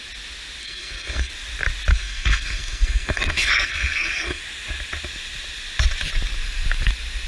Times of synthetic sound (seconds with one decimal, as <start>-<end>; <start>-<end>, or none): 0.6-1.3; 1.9-4.4